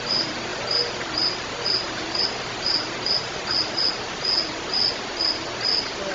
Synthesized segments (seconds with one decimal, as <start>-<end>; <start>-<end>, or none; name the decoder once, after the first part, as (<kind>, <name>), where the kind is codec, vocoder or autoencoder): none